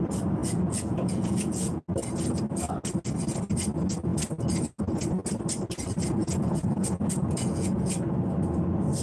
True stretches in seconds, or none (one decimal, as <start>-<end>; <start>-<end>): 0.0-0.4; 1.8-6.2; 7.9-9.0

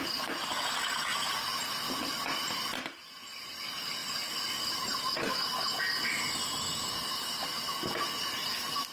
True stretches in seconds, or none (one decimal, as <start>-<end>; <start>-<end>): 0.0-8.9

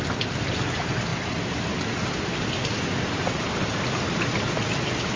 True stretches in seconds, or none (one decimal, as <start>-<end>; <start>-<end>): 0.0-5.2

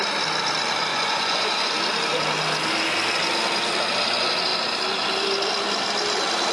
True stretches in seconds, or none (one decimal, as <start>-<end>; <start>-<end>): 0.0-0.9; 1.7-6.5

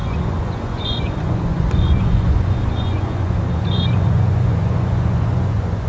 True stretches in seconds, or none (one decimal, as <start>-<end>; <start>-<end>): none

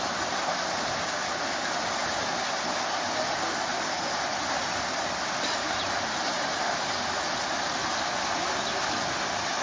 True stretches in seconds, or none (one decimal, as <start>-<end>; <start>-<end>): 0.0-9.6

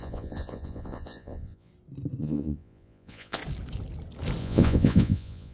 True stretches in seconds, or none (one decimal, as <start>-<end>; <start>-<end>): 1.7-2.2; 3.4-4.4

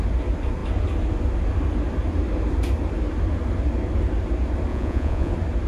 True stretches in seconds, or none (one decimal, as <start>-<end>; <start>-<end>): 0.0-4.7; 5.3-5.7